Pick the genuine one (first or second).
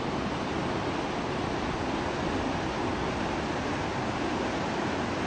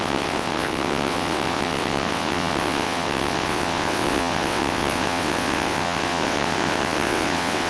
first